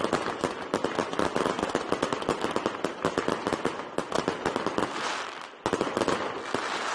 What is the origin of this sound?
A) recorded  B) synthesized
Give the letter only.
A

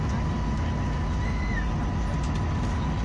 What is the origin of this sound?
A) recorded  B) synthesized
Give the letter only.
A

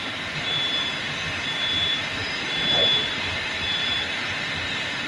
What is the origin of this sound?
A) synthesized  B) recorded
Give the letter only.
B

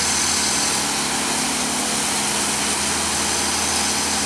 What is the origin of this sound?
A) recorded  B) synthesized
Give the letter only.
A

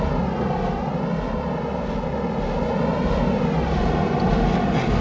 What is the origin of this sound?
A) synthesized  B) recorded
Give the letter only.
B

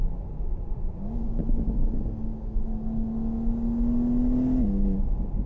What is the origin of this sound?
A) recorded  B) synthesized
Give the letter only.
A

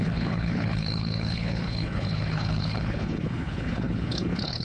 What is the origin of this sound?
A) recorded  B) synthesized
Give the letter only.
B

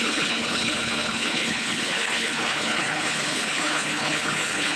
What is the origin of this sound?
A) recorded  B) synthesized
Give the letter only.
B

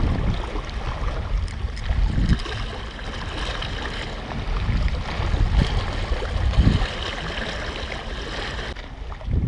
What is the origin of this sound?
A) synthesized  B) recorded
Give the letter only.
B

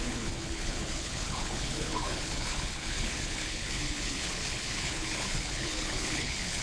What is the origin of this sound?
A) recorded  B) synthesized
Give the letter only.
B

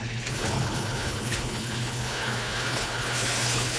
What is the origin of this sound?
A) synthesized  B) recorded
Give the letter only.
A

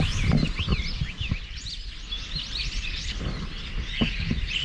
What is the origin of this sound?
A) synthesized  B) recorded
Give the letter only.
B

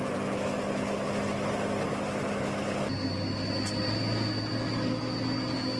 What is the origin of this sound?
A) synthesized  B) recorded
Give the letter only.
B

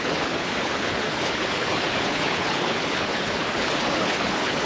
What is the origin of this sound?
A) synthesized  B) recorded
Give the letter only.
A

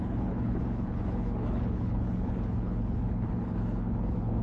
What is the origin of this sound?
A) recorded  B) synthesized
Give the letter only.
B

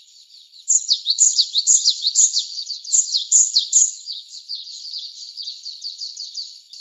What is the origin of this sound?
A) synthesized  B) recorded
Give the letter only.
A